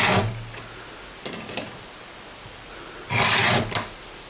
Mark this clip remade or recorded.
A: recorded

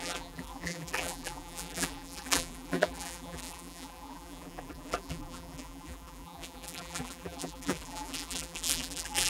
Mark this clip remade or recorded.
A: remade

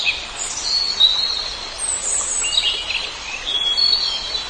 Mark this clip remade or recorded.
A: recorded